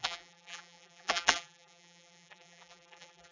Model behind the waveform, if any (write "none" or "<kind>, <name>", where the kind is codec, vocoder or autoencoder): vocoder, BigVGAN v2